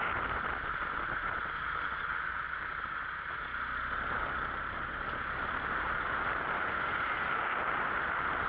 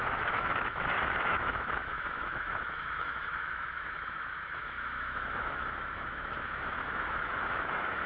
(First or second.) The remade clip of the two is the second